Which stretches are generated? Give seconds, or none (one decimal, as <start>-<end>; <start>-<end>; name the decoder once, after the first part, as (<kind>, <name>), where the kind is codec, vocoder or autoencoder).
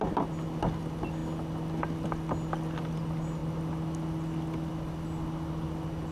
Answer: none